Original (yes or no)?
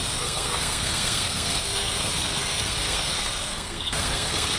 no